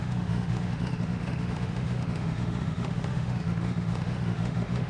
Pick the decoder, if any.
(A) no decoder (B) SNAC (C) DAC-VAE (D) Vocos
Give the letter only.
C